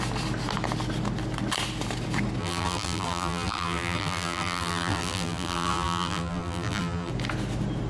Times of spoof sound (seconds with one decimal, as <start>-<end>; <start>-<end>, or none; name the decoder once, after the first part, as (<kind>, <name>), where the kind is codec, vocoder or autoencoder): 2.4-7.1 (vocoder, BigVGAN v2)